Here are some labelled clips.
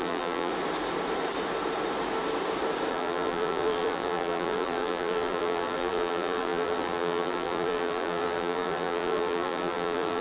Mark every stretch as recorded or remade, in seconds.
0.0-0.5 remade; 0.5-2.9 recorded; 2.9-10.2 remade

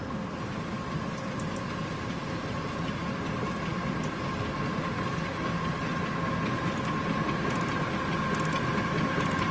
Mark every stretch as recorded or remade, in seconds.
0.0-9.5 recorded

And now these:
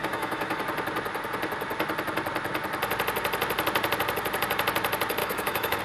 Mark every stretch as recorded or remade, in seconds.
0.0-0.6 remade; 0.6-5.2 recorded; 5.2-5.8 remade

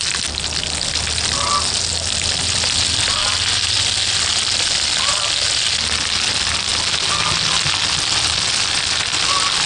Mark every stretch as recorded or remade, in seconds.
0.0-9.7 recorded

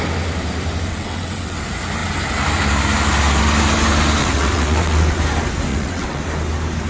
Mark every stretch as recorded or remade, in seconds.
0.0-0.9 recorded; 0.9-1.6 remade; 1.6-4.2 recorded; 4.2-5.2 remade; 5.2-5.7 recorded; 5.7-6.2 remade; 6.2-6.9 recorded

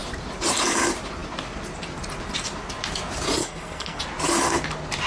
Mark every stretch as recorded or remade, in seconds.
0.0-3.4 recorded; 3.4-4.0 remade; 4.0-5.1 recorded